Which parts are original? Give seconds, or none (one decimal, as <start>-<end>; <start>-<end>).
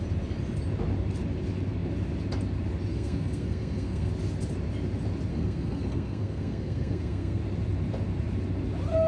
0.0-2.9; 4.1-5.3; 7.4-9.1